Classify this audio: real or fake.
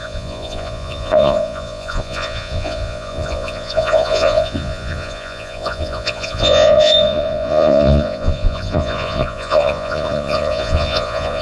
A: fake